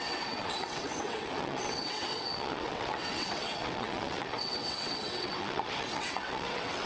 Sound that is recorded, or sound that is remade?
remade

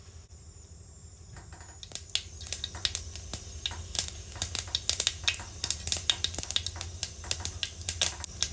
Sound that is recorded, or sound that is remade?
recorded